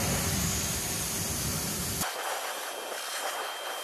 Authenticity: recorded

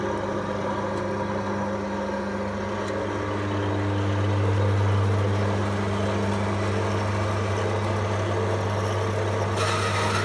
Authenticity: recorded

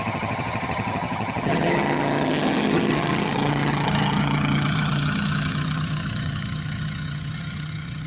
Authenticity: remade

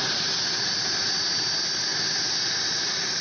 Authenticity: recorded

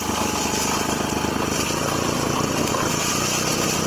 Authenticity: recorded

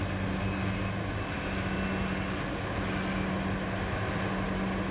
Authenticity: recorded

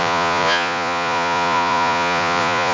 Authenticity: remade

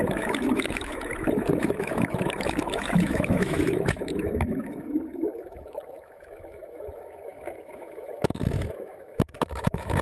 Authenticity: remade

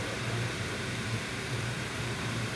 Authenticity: remade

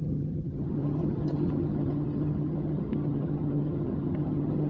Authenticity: remade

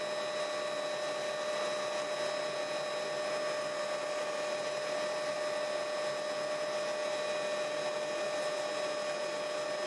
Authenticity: recorded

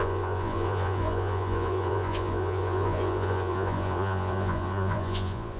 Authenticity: remade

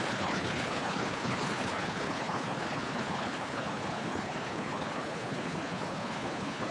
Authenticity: remade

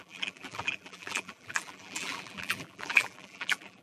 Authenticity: remade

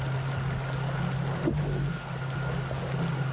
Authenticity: recorded